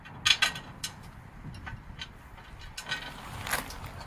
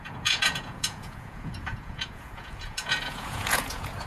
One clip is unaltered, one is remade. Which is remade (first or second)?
second